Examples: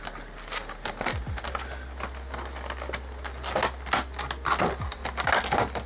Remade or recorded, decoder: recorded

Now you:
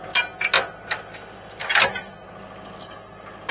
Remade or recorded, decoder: recorded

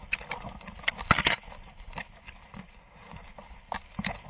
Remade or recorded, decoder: recorded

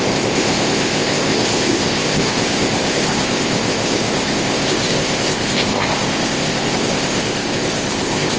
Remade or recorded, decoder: remade, codec, ZipCodec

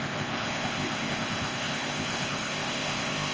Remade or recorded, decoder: remade, codec, ZipCodec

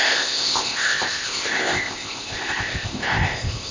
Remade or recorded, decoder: remade, codec, ZipCodec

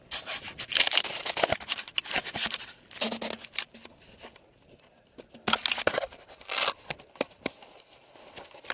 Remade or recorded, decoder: recorded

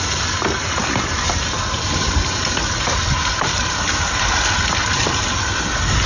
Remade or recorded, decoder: recorded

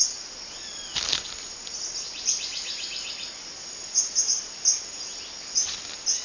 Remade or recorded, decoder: recorded